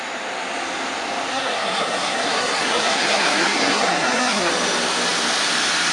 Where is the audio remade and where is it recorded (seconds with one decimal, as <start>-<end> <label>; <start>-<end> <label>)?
0.0-1.3 recorded; 1.3-4.5 remade; 4.5-5.9 recorded